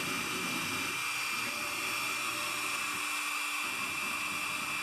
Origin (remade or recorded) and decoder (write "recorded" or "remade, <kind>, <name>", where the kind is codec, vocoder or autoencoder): recorded